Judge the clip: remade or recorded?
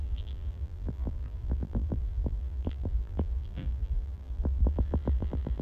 remade